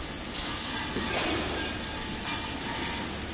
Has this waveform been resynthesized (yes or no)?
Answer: no